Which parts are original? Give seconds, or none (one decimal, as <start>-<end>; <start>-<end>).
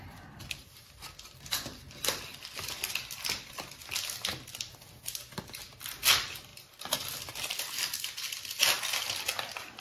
0.0-9.8